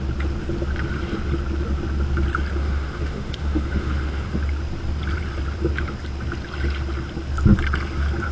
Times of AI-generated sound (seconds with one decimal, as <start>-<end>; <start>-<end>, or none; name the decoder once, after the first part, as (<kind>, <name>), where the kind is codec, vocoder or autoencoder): 2.6-4.4 (autoencoder, DAC-VAE)